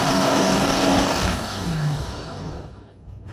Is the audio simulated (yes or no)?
yes